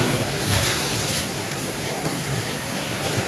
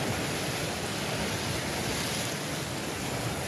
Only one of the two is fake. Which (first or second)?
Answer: first